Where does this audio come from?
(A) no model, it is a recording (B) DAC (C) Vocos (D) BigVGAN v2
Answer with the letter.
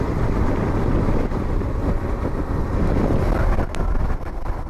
D